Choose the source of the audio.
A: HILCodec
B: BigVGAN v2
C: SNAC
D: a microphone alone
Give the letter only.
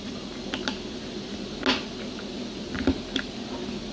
D